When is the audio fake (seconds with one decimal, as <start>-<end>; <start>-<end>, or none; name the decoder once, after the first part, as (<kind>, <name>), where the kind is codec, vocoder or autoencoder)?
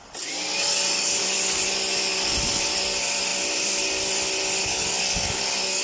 0.5-1.2 (codec, DAC); 4.6-5.8